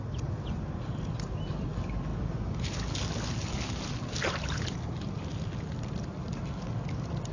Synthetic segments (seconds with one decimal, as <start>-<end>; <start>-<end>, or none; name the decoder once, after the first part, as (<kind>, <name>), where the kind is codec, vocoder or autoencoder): none

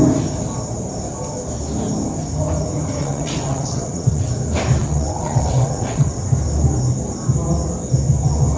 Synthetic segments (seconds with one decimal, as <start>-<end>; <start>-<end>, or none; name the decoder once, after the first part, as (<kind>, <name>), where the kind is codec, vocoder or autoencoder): 3.0-4.3 (vocoder, WaveNeXt); 4.8-6.2